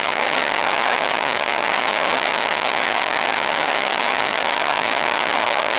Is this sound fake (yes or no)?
yes